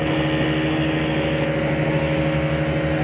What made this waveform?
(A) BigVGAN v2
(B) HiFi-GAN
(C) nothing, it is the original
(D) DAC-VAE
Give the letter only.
C